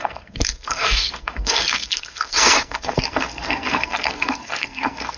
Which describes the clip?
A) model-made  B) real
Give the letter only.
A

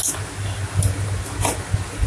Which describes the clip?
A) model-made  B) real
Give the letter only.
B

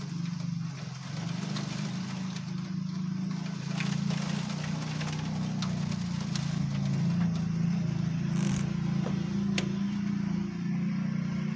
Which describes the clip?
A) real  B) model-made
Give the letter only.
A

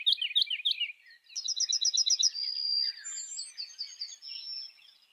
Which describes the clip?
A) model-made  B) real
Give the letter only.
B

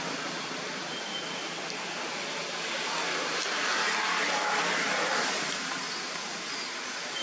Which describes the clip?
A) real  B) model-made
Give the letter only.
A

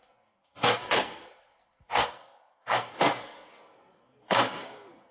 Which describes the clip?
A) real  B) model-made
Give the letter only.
B